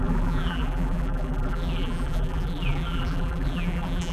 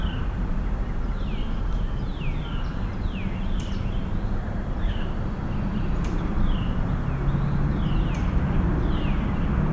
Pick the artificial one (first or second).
first